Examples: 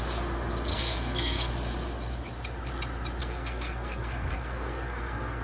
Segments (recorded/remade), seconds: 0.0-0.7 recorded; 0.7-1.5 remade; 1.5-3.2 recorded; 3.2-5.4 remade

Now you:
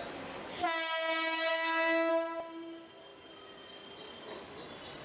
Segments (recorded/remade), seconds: 0.0-1.5 recorded; 1.5-2.1 remade; 2.1-5.0 recorded

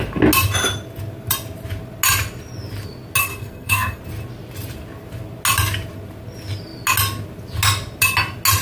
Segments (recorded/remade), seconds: 0.0-3.2 recorded; 3.2-4.0 remade; 4.0-8.6 recorded

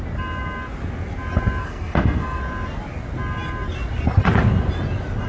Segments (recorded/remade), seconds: 0.0-1.6 recorded; 1.6-2.4 remade; 2.4-5.3 recorded

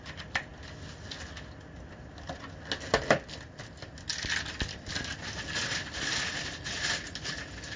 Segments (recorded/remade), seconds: 0.0-7.8 recorded

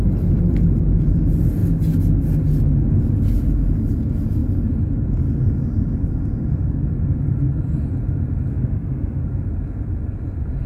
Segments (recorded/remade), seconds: 0.0-8.5 recorded; 8.5-9.2 remade; 9.2-10.7 recorded

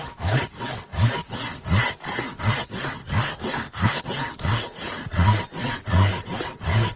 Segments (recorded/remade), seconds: 0.0-3.0 recorded; 3.0-4.0 remade; 4.0-7.0 recorded

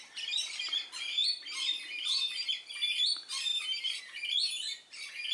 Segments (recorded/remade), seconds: 0.0-5.3 recorded